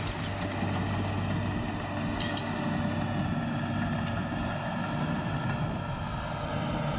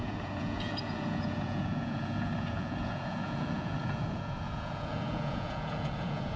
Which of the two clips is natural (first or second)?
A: first